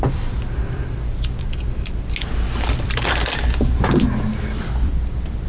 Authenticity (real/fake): real